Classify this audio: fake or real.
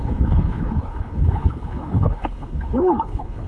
fake